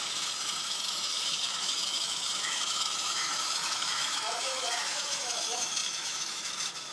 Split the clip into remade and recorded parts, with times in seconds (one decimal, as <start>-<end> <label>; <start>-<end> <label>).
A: 0.0-6.9 remade